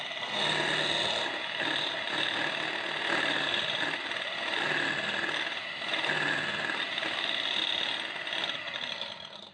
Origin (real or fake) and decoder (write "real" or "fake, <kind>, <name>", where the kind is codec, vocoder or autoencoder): real